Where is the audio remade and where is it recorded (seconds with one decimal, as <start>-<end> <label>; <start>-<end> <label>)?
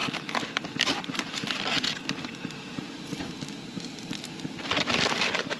0.0-5.6 recorded